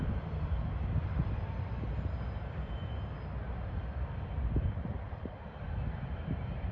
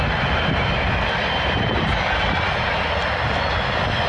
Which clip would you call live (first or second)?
second